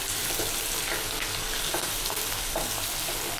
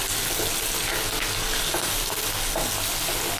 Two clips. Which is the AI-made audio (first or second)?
first